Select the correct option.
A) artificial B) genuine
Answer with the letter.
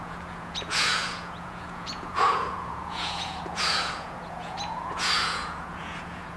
A